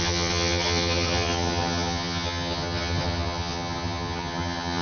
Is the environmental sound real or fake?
fake